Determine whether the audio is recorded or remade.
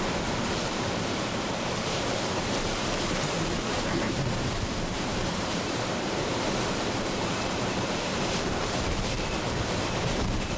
remade